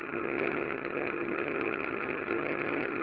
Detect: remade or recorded remade